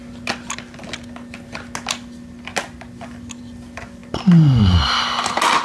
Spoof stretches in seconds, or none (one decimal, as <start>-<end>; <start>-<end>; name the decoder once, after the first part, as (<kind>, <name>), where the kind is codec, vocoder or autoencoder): none